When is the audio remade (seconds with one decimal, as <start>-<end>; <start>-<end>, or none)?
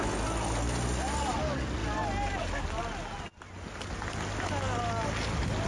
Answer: 1.8-2.4